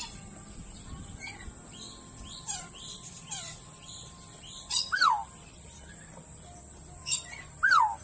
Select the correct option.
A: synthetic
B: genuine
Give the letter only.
A